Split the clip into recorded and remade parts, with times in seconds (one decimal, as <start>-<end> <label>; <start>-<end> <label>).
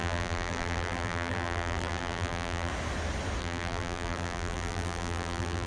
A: 0.0-2.7 remade; 2.7-3.4 recorded; 3.4-5.7 remade